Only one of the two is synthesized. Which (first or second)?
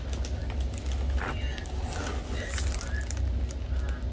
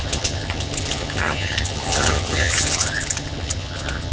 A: second